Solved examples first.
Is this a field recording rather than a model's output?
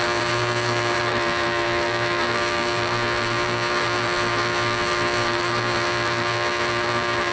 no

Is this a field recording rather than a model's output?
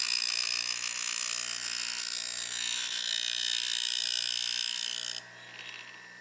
yes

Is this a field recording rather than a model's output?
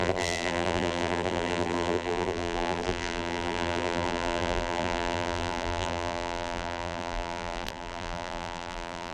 no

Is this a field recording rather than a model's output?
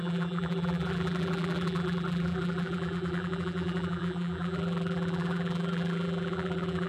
no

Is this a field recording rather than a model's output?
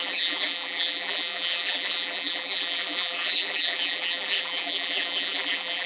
no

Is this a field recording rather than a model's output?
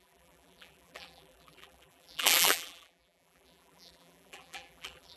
no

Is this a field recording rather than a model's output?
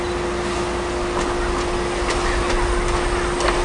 yes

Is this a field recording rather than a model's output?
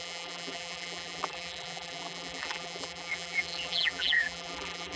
no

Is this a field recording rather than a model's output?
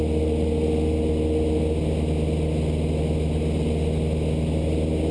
yes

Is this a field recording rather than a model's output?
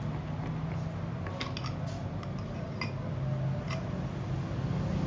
yes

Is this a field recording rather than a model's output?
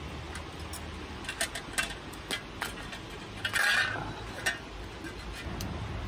yes